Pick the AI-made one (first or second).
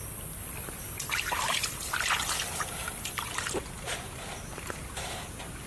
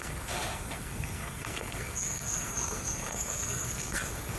second